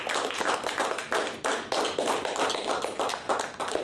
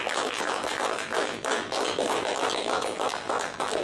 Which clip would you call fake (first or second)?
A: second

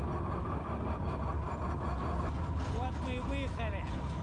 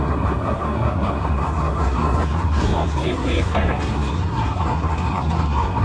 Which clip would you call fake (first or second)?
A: second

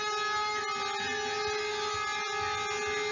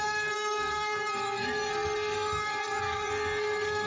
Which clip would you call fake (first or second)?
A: second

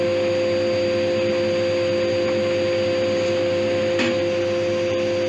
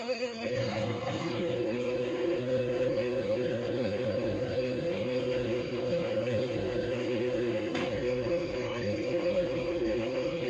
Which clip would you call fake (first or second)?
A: second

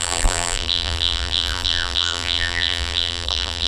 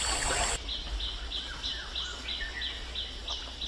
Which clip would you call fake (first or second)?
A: first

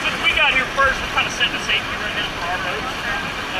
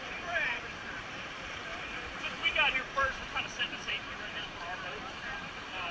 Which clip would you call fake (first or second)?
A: second